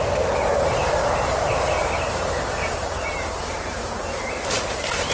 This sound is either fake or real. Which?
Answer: fake